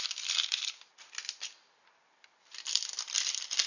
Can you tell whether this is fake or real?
real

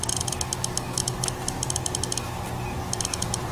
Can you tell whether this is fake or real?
real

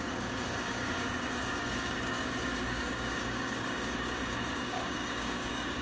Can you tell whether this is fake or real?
fake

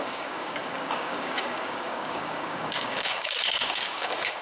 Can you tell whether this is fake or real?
fake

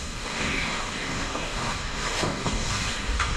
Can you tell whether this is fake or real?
fake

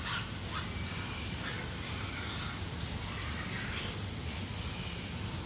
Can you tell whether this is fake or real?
real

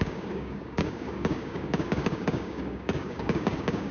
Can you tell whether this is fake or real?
fake